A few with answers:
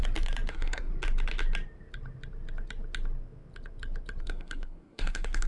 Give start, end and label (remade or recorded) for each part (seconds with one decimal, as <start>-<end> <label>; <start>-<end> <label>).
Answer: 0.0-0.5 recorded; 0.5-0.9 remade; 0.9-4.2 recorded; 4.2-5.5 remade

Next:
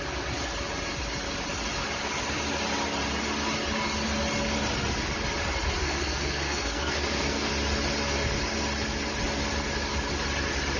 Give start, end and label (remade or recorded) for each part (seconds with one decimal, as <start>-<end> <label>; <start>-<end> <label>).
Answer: 0.0-5.8 recorded; 5.8-7.5 remade; 7.5-10.8 recorded

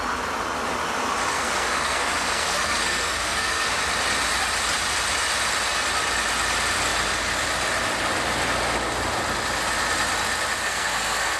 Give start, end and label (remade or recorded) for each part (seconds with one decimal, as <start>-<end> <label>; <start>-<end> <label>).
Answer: 0.0-1.3 recorded; 1.3-3.7 remade; 3.7-10.6 recorded; 10.6-11.4 remade

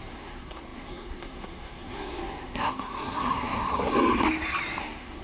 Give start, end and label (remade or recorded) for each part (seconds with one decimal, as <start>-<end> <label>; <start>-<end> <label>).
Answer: 0.0-3.9 remade; 3.9-4.8 recorded; 4.8-5.2 remade